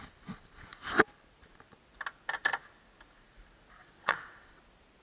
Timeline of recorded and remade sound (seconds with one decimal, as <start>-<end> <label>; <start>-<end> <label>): 0.0-3.8 recorded; 3.8-4.6 remade; 4.6-5.0 recorded